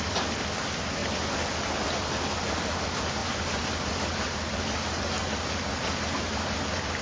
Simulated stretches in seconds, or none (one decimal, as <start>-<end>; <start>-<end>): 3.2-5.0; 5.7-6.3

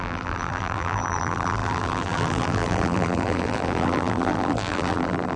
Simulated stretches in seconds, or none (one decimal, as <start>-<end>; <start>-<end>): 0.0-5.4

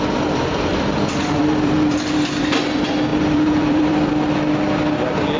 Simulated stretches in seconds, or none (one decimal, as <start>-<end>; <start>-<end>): 0.7-2.6; 3.1-4.1